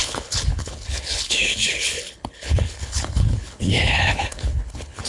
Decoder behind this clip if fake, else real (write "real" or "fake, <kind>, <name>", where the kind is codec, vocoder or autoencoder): fake, codec, HILCodec